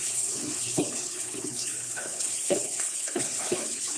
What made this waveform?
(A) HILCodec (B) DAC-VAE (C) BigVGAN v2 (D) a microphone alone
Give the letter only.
A